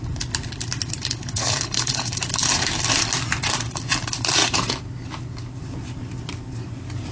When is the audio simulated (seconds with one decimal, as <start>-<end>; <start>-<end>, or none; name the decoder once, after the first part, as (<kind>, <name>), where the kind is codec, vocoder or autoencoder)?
1.2-2.2 (codec, HILCodec)